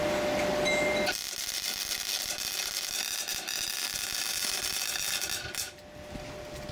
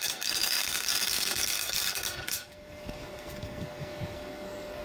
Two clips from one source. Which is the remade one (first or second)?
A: second